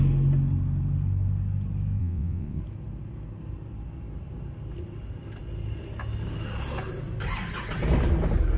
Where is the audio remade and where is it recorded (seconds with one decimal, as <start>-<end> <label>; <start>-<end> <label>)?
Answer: 0.0-2.0 recorded; 2.0-2.6 remade; 2.6-8.6 recorded